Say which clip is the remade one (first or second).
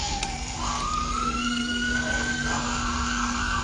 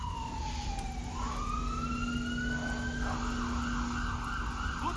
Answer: first